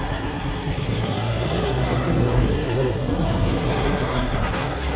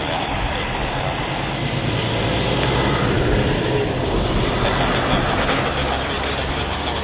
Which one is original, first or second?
second